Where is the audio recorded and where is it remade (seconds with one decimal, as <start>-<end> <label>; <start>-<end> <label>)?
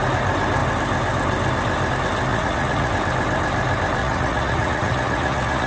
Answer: 0.0-2.3 recorded; 2.3-2.9 remade; 2.9-4.0 recorded; 4.0-5.7 remade